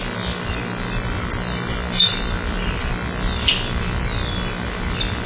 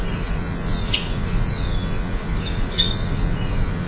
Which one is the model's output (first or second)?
second